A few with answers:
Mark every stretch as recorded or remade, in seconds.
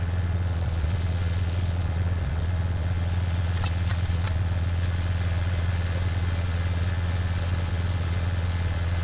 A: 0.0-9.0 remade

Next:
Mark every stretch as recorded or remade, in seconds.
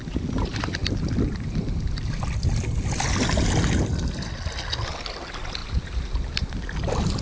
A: 0.0-7.2 recorded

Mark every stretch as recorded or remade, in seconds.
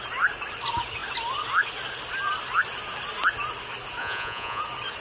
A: 0.0-4.0 recorded; 4.0-4.6 remade; 4.6-5.0 recorded